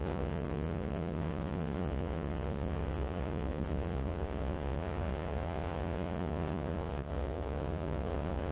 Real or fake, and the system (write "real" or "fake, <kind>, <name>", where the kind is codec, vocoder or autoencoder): fake, vocoder, Vocos